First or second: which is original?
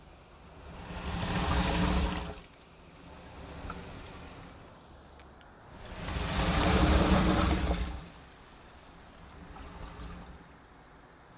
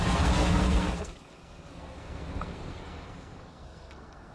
first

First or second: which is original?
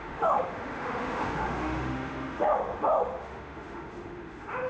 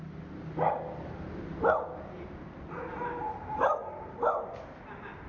second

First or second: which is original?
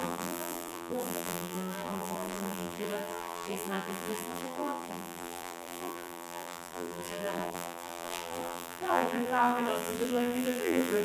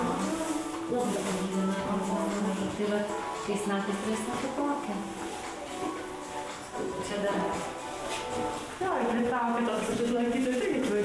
second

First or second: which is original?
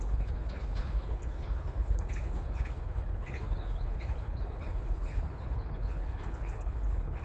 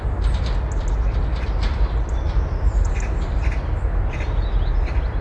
second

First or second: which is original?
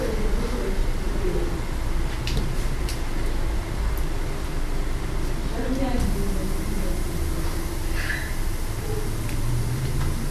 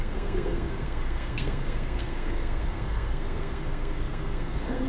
first